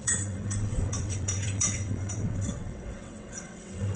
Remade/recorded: remade